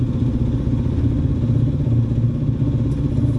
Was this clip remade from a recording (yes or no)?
no